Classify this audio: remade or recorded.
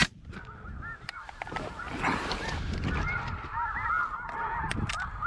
recorded